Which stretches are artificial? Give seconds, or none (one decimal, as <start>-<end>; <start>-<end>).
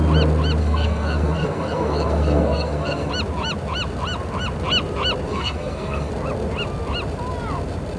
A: 0.6-3.1; 5.3-6.1